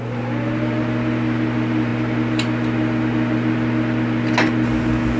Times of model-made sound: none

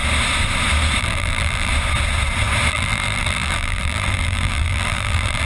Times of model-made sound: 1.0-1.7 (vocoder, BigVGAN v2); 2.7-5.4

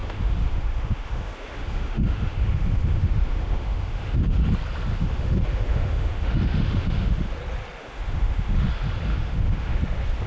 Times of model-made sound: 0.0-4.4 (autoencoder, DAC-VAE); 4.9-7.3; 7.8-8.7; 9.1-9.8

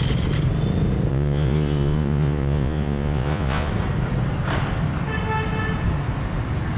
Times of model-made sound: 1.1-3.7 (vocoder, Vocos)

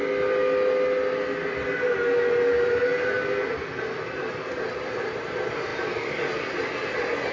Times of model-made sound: none

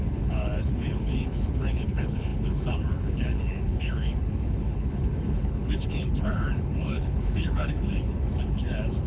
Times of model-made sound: 0.0-9.1 (codec, HILCodec)

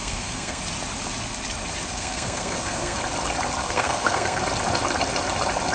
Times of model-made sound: 0.0-0.6 (codec, SNAC); 1.9-3.0; 3.6-4.4